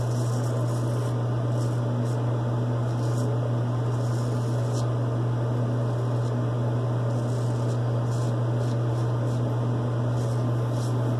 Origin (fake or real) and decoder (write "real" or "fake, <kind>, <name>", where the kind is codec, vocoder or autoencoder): real